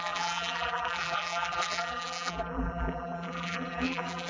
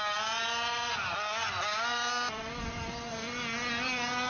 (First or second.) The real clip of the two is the second